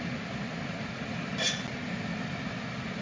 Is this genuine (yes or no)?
yes